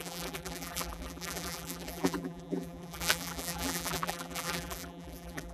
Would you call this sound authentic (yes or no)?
no